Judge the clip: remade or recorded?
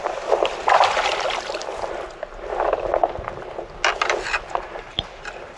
recorded